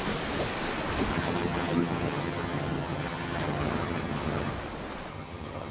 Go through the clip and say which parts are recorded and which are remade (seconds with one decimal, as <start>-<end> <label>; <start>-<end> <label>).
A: 0.0-1.1 recorded; 1.1-4.5 remade; 4.5-5.1 recorded; 5.1-5.7 remade